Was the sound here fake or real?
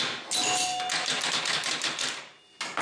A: real